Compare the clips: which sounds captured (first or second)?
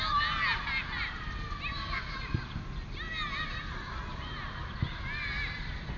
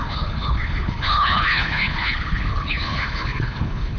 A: first